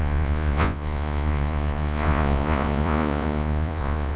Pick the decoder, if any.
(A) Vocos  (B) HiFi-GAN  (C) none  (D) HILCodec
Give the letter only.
A